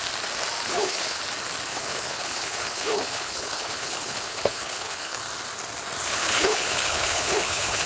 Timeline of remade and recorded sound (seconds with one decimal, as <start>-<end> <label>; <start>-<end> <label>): 0.0-0.7 recorded; 0.7-1.2 remade; 1.2-1.7 recorded; 1.7-5.2 remade; 5.2-6.1 recorded; 6.1-7.9 remade